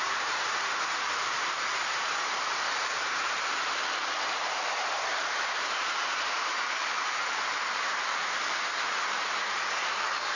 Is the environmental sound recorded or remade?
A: remade